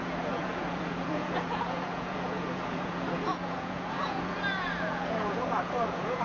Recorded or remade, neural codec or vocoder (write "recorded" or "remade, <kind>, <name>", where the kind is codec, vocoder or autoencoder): remade, vocoder, Vocos